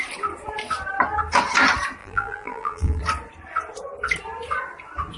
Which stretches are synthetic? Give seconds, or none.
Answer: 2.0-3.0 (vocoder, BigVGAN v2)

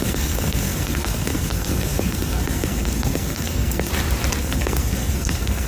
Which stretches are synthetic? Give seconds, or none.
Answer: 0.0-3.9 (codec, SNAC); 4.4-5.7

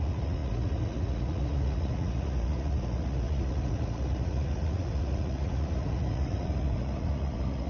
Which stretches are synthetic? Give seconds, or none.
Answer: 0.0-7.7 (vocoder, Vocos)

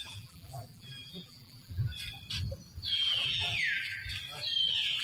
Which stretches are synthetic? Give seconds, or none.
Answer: 0.0-1.9 (vocoder, BigVGAN v2); 2.9-4.0

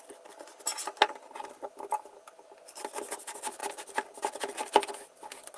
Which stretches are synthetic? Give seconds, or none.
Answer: 0.7-1.6 (vocoder, BigVGAN v2); 3.6-4.9